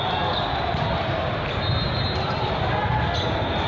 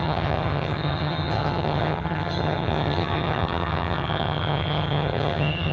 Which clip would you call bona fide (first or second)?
first